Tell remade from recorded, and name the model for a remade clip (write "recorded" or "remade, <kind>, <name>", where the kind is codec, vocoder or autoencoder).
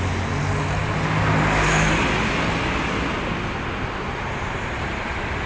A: recorded